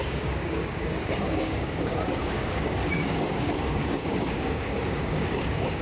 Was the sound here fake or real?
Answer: fake